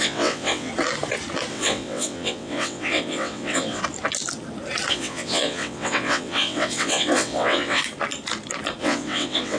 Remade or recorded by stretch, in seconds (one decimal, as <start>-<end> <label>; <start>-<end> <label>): 0.0-0.7 remade; 0.7-1.5 recorded; 1.5-3.8 remade; 3.8-4.9 recorded; 4.9-7.8 remade; 7.8-8.8 recorded; 8.8-9.6 remade